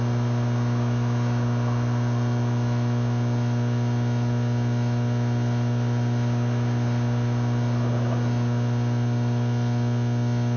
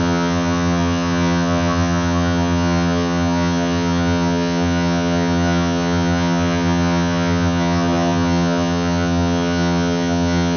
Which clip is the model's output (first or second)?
second